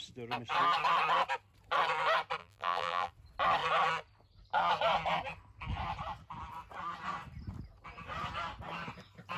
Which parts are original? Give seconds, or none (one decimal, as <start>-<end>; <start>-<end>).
0.0-2.4; 3.1-9.4